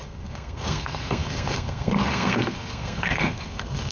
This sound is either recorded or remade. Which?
remade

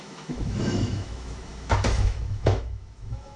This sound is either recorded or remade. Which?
remade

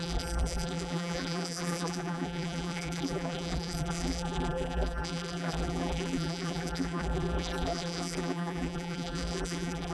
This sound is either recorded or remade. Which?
remade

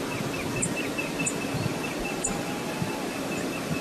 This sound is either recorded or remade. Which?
recorded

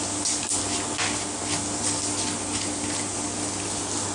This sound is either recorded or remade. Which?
recorded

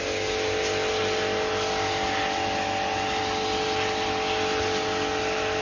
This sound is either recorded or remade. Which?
recorded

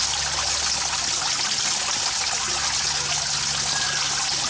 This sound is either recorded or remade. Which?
recorded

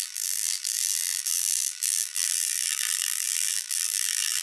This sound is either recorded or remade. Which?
remade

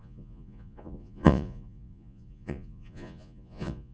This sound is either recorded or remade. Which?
remade